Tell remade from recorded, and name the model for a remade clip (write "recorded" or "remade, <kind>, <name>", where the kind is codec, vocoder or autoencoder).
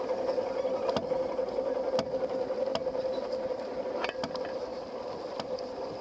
recorded